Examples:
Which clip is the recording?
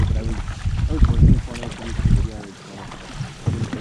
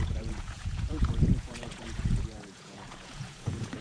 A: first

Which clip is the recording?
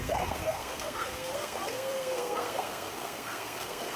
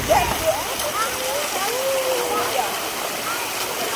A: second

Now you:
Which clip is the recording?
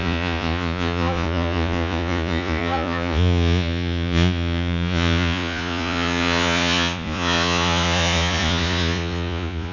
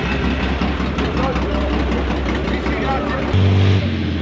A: second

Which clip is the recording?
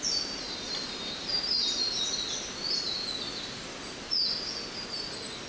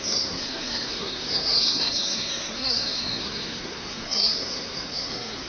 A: first